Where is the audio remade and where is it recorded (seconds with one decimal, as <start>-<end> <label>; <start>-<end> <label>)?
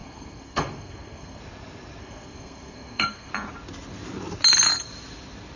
0.0-1.4 remade; 1.4-2.0 recorded; 2.0-3.3 remade; 3.3-5.6 recorded